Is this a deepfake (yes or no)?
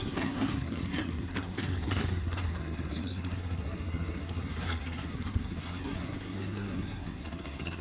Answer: yes